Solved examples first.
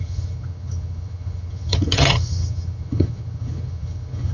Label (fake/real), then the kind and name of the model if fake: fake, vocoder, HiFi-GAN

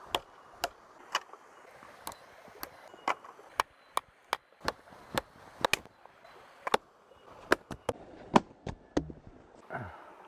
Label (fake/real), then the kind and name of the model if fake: real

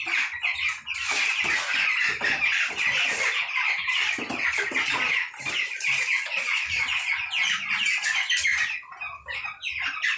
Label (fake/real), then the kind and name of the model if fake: real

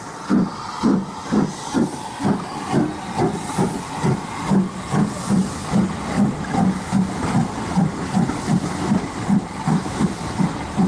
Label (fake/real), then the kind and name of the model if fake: real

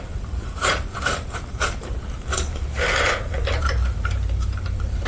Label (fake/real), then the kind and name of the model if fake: fake, vocoder, BigVGAN v2